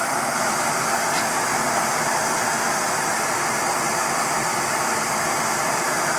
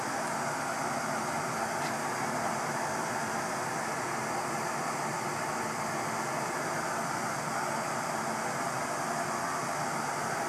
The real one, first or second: second